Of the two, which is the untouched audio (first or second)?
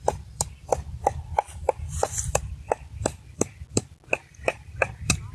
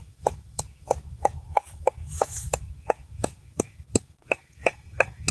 first